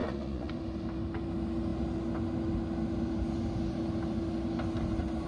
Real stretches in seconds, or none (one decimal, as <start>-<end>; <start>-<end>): 0.5-5.3

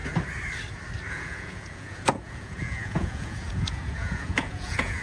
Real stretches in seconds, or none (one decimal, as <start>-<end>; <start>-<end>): 0.0-1.1

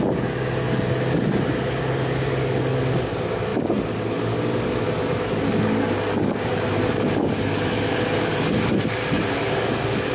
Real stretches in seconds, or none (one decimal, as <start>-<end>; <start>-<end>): none

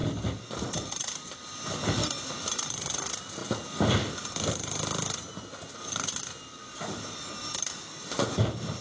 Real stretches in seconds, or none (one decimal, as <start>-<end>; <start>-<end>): 0.0-8.8

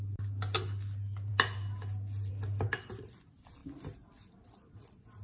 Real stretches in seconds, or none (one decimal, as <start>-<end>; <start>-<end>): 0.0-5.2

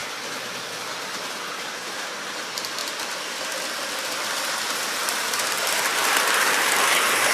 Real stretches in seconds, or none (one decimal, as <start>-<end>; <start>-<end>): 1.1-2.8; 6.8-7.3